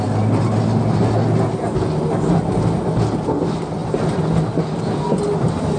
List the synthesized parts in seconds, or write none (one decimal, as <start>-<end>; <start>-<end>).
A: none